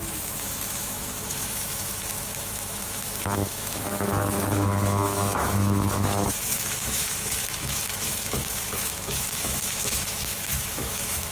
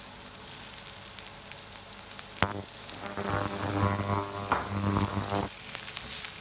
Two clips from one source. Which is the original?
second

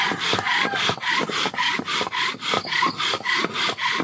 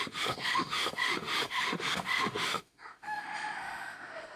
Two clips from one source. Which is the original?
first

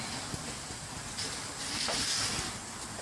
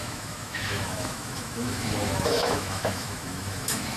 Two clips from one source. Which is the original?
first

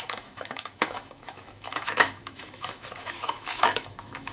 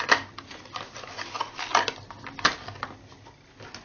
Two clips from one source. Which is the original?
second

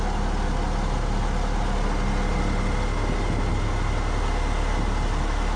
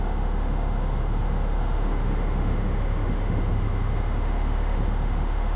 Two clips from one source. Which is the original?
first